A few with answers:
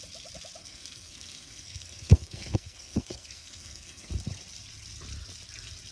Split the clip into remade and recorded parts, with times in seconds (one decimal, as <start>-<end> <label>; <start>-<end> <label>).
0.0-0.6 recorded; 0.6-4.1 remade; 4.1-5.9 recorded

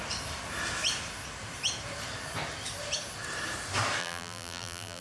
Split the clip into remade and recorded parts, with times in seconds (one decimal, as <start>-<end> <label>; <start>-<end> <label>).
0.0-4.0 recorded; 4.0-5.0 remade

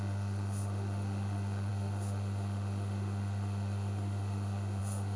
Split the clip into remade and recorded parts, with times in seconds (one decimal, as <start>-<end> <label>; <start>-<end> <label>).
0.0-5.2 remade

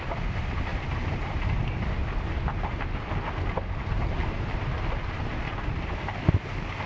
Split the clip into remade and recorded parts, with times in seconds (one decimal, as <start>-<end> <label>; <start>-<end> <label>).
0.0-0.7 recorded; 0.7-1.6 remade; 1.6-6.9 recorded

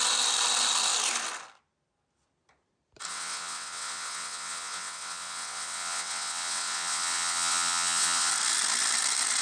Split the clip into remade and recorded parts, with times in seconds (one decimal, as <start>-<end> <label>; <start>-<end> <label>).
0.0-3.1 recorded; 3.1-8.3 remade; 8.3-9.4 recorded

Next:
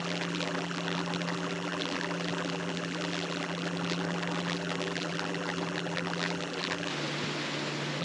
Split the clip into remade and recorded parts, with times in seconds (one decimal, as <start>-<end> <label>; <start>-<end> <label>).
0.0-6.9 remade; 6.9-8.0 recorded

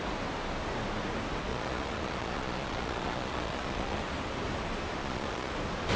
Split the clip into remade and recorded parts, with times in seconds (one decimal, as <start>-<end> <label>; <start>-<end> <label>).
0.0-1.5 recorded; 1.5-4.0 remade; 4.0-5.0 recorded; 5.0-5.5 remade; 5.5-6.0 recorded

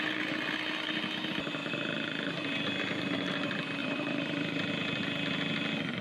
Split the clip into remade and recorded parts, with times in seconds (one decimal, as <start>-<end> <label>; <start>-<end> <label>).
0.0-3.8 recorded; 3.8-4.7 remade; 4.7-6.0 recorded